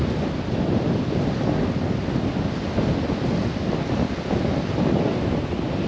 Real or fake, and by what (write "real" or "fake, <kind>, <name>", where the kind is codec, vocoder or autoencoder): real